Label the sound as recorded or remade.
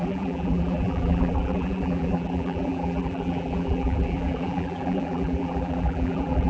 remade